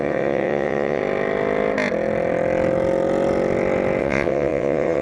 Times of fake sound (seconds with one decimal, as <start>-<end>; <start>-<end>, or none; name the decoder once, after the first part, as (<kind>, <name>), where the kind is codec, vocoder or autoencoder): 0.0-1.0 (vocoder, WaveNeXt); 4.0-5.0